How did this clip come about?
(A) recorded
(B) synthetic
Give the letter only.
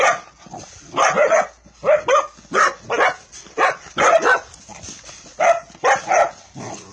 A